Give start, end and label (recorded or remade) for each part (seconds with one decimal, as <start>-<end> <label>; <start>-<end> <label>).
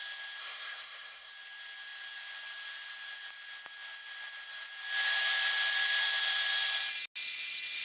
0.0-0.4 recorded; 0.4-1.3 remade; 1.3-7.8 recorded